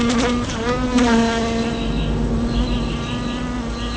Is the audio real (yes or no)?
yes